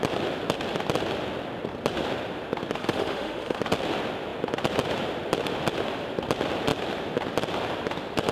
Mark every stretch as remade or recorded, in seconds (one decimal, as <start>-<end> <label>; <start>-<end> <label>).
0.0-2.8 recorded; 2.8-3.6 remade; 3.6-8.3 recorded